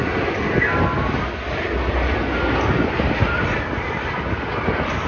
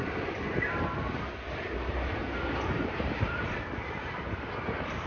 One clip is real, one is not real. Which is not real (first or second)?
second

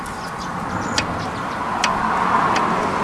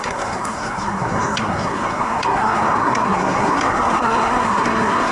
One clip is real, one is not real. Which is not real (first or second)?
second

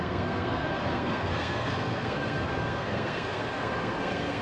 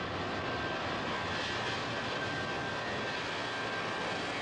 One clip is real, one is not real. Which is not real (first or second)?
first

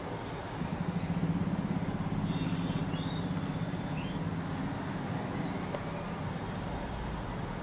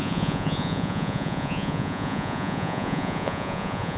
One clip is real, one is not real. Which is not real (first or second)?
second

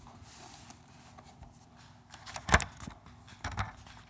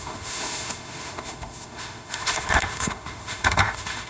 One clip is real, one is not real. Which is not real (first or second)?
second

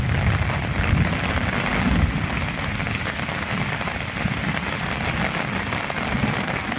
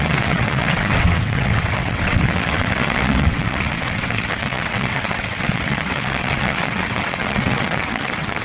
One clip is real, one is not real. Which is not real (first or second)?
second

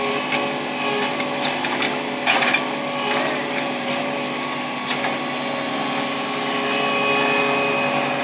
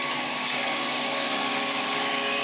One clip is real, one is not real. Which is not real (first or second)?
second